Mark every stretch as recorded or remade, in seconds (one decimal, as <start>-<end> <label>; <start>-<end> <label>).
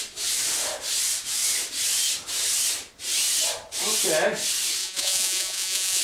0.0-4.8 recorded; 4.8-6.0 remade